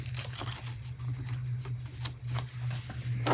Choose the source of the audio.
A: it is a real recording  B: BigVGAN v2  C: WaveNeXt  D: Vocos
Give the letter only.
A